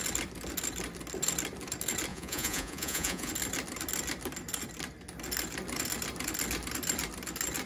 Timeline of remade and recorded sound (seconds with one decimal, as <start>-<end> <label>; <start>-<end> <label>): 0.0-2.1 recorded; 2.1-3.3 remade; 3.3-7.7 recorded